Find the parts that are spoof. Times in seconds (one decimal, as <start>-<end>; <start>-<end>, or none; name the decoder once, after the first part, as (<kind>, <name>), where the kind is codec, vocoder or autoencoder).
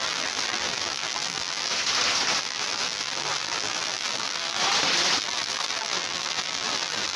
0.0-1.7 (vocoder, BigVGAN v2); 2.4-4.6; 5.2-7.2